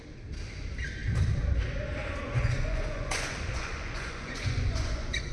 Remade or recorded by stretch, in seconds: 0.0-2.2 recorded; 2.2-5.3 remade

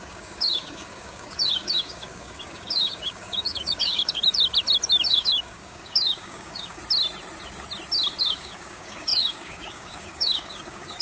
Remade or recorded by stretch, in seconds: 0.0-4.2 remade; 4.2-5.1 recorded; 5.1-6.8 remade; 6.8-8.2 recorded; 8.2-11.0 remade

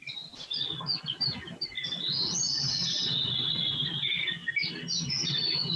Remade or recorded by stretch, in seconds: 0.0-5.8 recorded

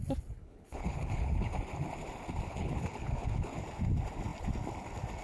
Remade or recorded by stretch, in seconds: 0.0-0.4 recorded; 0.4-1.6 remade; 1.6-2.5 recorded; 2.5-3.6 remade; 3.6-5.2 recorded

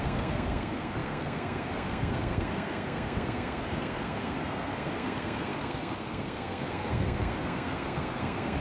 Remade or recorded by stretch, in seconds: 0.0-8.6 remade

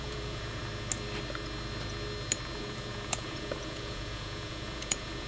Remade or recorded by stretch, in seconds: 0.0-0.6 remade; 0.6-2.6 recorded; 2.6-5.3 remade